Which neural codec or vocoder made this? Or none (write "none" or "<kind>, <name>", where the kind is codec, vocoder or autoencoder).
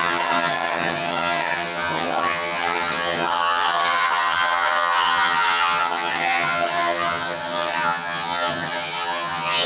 vocoder, HiFi-GAN